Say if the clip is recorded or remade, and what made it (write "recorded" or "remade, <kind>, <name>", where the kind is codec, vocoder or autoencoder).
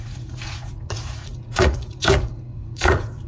remade, vocoder, Vocos